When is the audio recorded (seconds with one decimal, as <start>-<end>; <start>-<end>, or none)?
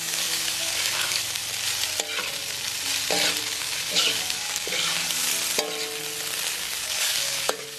1.4-3.4; 5.3-6.5